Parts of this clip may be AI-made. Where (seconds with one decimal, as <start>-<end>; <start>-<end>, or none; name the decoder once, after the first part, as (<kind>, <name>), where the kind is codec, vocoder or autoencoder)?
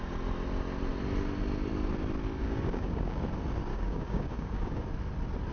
2.4-3.2 (codec, DAC); 3.7-4.8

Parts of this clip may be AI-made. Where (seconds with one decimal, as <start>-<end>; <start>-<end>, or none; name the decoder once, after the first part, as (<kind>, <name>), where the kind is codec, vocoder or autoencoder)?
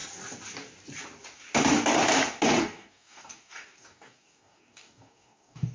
2.6-5.7 (codec, DAC)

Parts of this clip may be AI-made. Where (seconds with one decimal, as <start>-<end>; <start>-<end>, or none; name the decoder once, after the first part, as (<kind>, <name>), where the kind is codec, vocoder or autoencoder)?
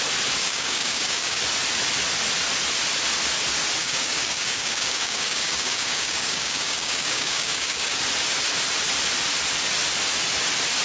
0.4-1.4 (codec, DAC); 3.8-8.0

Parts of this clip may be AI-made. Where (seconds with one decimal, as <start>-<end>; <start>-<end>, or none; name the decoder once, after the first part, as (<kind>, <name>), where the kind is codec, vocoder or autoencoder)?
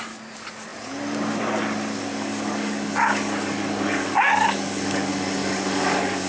2.1-6.3 (codec, DAC)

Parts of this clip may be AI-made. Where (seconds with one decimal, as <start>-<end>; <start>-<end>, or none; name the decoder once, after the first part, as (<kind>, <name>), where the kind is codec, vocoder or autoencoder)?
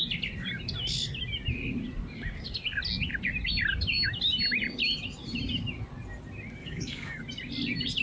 6.6-7.2 (codec, DAC)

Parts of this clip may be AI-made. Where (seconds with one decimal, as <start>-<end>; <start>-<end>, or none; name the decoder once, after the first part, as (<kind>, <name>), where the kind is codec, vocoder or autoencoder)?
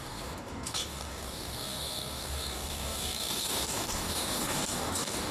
0.0-5.3 (codec, DAC)